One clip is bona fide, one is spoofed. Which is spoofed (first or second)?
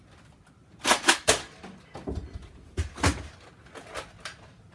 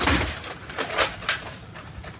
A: second